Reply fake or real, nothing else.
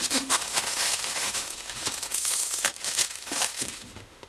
fake